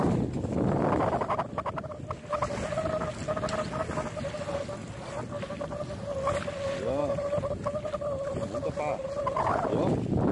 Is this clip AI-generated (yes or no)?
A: no